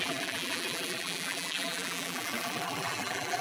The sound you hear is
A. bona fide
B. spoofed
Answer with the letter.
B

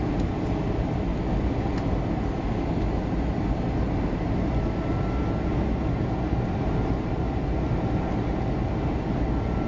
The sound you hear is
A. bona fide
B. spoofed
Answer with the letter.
A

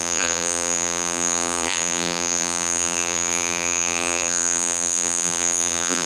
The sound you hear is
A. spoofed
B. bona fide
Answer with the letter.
A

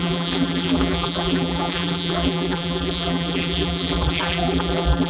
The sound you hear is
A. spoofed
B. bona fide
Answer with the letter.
A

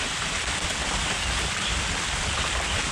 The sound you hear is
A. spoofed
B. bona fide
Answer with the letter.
B